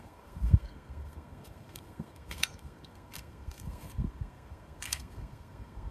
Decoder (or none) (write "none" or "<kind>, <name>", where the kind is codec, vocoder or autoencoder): codec, SNAC